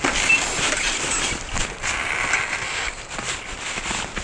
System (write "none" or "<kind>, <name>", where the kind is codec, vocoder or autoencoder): vocoder, BigVGAN v2